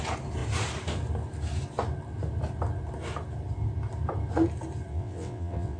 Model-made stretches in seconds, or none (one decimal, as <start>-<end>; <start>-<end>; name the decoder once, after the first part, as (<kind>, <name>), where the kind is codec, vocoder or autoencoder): 4.9-5.8 (vocoder, WaveNeXt)